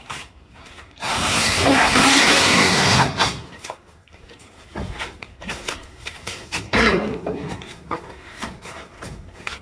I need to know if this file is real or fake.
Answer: fake